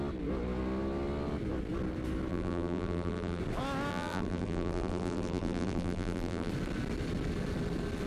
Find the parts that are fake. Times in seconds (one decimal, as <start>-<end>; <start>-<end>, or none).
2.3-3.4; 3.9-6.5